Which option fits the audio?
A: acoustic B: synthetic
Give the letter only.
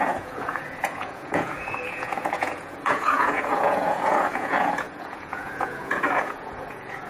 B